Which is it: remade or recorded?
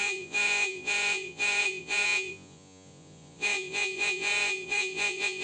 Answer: remade